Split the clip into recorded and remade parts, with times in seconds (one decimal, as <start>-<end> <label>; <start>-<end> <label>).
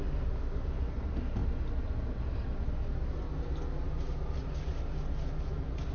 0.0-5.9 recorded